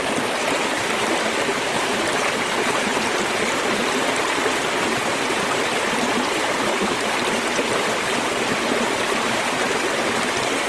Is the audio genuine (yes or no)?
yes